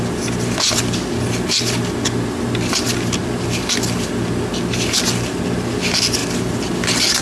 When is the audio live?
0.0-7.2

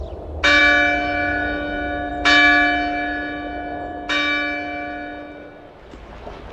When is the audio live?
0.0-6.5